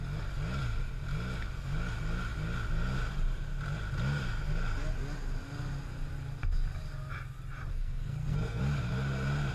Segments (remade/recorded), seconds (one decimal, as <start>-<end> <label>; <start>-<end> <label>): 0.0-7.7 recorded; 7.7-8.6 remade; 8.6-9.5 recorded